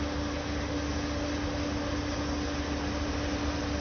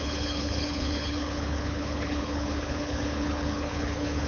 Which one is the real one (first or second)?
first